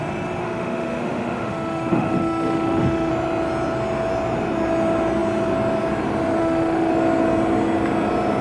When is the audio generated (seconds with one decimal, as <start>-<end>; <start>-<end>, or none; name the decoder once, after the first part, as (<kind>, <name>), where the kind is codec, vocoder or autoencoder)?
0.4-3.1 (autoencoder, DAC-VAE); 6.4-6.9